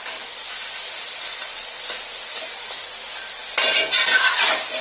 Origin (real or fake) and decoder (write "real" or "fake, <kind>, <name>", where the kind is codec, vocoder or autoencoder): real